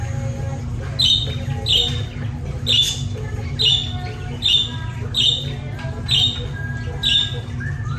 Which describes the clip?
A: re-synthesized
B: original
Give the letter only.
B